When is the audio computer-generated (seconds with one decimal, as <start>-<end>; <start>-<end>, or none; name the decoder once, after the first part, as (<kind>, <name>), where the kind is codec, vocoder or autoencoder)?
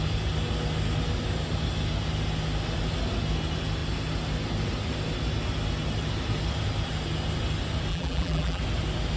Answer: 7.9-8.6 (vocoder, BigVGAN v2)